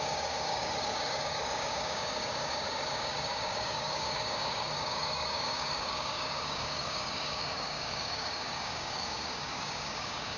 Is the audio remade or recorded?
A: remade